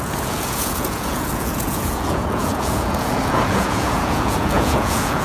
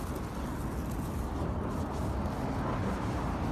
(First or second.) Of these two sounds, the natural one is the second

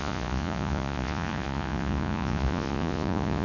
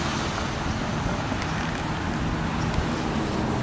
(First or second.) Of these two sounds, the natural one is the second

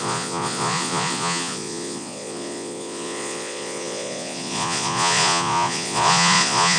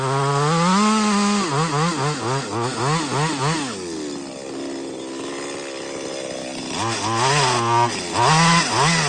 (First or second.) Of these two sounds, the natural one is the second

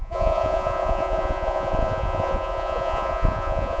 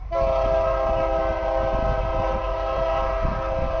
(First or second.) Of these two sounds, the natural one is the second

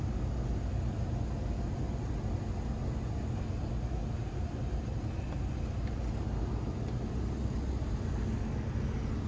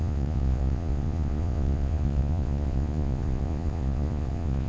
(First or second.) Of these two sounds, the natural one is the first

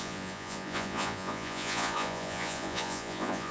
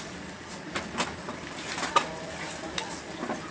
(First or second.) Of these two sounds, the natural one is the second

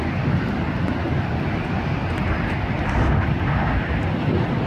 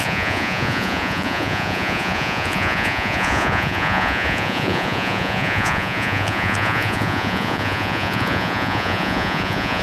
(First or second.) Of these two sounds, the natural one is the first